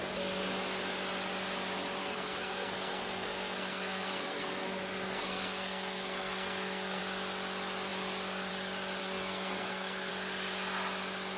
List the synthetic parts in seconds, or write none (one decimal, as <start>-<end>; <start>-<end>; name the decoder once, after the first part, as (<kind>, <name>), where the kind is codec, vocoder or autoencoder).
2.0-7.0 (codec, SNAC); 9.0-10.1